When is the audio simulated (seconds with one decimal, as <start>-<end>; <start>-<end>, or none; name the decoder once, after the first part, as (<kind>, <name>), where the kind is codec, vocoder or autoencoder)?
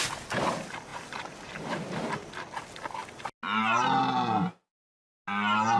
none